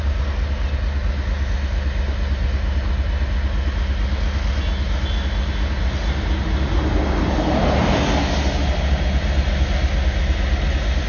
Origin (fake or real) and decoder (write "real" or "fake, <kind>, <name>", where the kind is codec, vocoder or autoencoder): real